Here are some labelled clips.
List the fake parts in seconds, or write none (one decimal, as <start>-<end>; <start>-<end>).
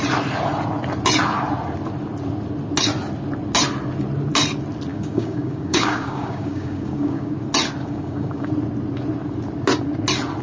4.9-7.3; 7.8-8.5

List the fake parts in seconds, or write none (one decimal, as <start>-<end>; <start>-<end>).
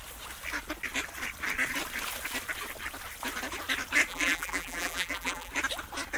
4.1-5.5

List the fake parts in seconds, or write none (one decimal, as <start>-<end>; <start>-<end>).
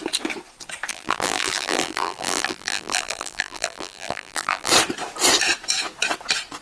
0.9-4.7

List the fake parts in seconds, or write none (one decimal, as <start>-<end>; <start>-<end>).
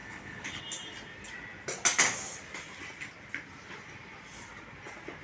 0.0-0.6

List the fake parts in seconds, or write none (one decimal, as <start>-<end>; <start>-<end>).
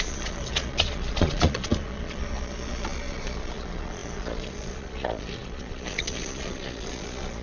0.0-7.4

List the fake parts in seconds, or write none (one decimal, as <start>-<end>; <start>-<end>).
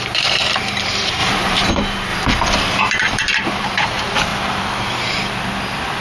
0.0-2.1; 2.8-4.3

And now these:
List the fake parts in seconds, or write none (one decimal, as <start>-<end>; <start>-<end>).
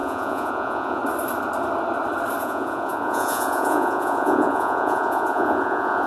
0.0-1.0; 2.4-6.1